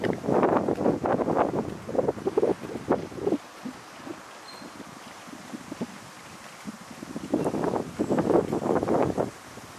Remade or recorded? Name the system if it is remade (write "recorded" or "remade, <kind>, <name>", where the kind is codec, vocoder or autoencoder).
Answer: recorded